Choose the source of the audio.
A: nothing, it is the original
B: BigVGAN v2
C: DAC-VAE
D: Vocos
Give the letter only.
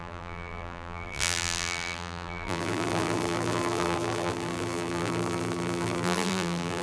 B